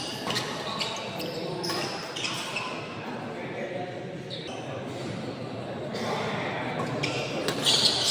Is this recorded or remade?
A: recorded